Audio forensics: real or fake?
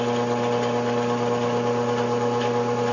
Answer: real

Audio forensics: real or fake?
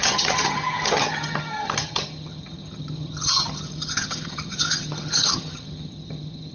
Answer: fake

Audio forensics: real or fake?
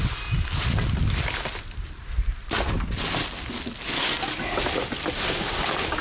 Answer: real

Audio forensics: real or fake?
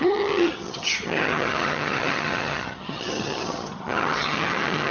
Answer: fake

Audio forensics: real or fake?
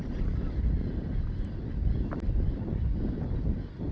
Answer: real